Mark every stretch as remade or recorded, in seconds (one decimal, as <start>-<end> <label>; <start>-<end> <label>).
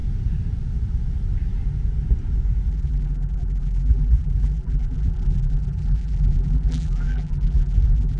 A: 0.0-2.7 recorded; 2.7-8.2 remade